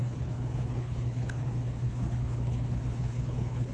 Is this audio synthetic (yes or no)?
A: yes